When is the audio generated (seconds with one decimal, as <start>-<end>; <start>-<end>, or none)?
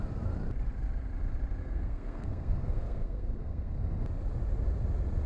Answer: 1.6-3.7